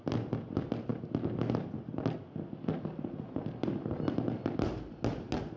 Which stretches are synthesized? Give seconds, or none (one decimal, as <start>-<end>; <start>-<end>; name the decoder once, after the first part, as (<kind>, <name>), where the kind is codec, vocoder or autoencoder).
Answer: none